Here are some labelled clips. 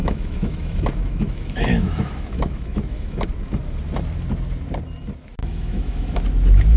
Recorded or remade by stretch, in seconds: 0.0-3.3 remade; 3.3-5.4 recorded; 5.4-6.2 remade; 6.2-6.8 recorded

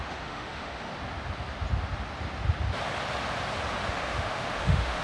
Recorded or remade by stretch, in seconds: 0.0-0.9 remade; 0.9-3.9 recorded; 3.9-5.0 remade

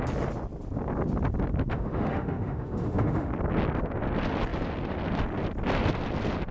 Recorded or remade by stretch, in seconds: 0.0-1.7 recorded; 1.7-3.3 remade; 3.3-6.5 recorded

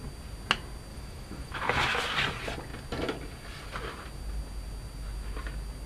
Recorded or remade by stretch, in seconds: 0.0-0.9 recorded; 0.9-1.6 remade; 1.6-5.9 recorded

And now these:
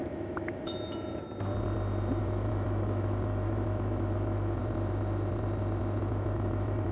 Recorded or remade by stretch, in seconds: 0.0-0.7 remade; 0.7-2.2 recorded; 2.2-4.6 remade; 4.6-6.0 recorded; 6.0-6.9 remade

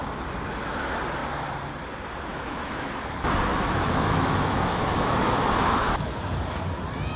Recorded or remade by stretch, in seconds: 0.0-2.3 recorded; 2.3-2.9 remade; 2.9-3.5 recorded; 3.5-5.5 remade; 5.5-7.2 recorded

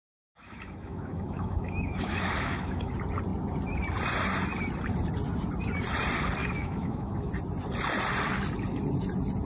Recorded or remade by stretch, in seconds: 0.0-2.9 remade; 2.9-6.4 recorded; 6.4-7.3 remade; 7.3-9.5 recorded

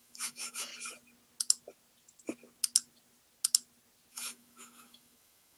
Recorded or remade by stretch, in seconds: 0.0-0.7 remade; 0.7-4.1 recorded; 4.1-5.6 remade